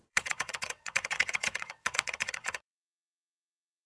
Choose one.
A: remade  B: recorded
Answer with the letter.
A